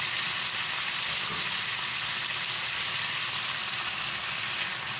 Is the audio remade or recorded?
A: recorded